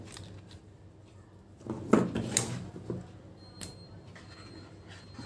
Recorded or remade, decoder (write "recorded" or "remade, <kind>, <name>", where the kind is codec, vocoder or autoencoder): recorded